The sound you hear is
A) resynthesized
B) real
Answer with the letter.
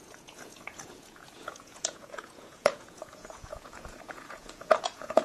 A